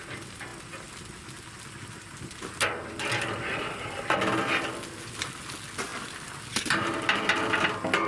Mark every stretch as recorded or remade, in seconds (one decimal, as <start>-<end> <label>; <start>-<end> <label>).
0.0-8.1 recorded